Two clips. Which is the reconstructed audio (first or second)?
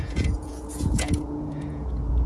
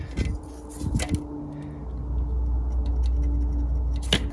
first